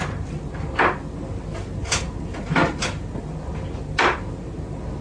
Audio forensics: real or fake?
real